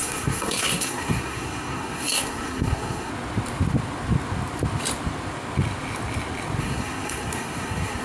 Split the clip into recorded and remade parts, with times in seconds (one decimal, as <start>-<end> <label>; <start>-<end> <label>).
0.0-3.1 remade; 3.1-6.6 recorded; 6.6-8.0 remade